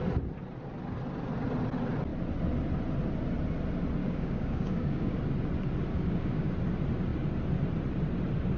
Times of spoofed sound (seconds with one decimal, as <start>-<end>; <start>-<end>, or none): 4.0-5.2; 5.9-6.5